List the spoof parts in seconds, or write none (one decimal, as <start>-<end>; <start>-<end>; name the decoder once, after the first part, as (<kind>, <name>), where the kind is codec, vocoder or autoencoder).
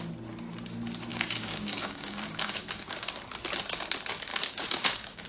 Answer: 1.1-3.1 (codec, DAC); 4.3-5.3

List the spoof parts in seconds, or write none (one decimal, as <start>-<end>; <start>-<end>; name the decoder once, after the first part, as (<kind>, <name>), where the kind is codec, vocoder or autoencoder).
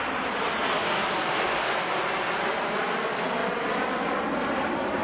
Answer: 0.8-2.0 (codec, DAC)